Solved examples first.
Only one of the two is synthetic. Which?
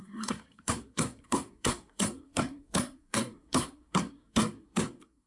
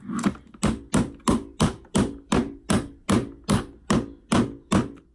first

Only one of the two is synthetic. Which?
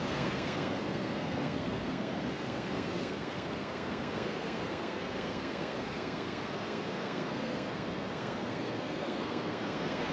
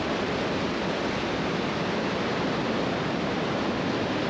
first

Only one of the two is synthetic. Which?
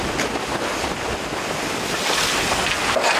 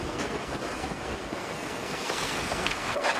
second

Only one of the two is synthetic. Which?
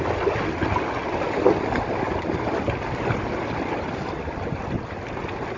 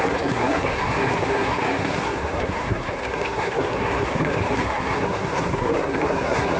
second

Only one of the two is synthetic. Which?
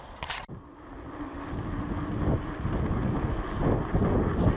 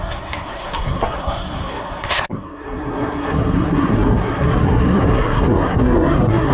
second